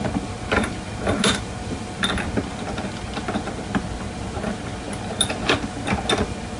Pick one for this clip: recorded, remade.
recorded